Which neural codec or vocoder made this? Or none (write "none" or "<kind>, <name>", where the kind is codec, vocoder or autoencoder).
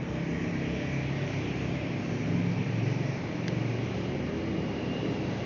vocoder, BigVGAN v2